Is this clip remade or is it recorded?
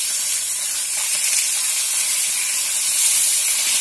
recorded